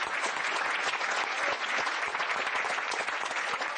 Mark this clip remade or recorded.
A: remade